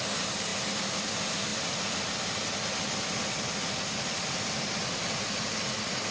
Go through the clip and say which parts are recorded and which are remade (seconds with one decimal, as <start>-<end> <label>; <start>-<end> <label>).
0.0-1.5 recorded; 1.5-5.2 remade; 5.2-6.1 recorded